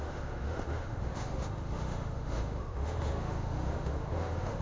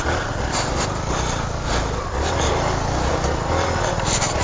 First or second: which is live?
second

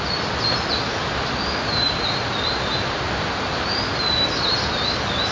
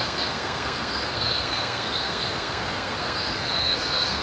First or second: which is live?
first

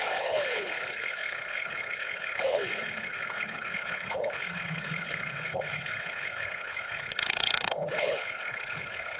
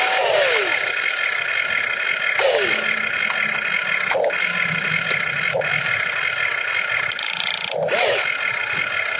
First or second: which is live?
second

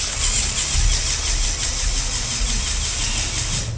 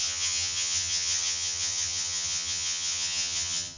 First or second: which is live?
first